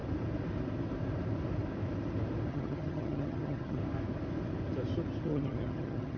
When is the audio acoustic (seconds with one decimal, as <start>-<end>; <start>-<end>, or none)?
0.0-2.5; 3.8-5.2

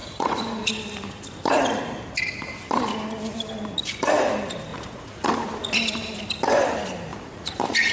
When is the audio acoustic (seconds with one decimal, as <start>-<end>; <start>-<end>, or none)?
0.7-4.7; 5.3-7.1

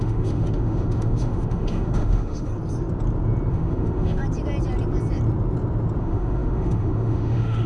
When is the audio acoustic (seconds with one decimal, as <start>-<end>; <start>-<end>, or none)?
2.5-3.5; 4.2-6.0